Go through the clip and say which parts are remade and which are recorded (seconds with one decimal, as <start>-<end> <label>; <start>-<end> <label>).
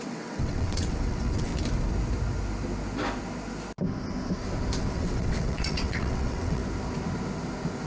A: 0.0-1.5 remade; 1.5-4.9 recorded; 4.9-6.6 remade; 6.6-7.9 recorded